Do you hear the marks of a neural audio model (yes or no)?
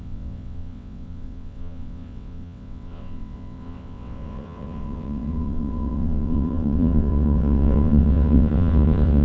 yes